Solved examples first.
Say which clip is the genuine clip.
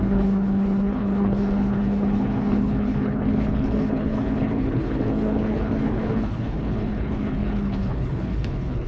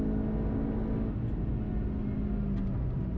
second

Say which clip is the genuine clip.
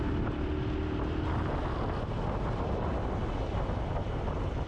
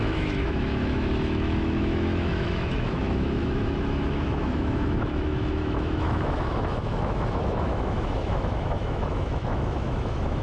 first